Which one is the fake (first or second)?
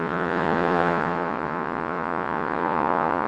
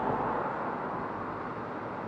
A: first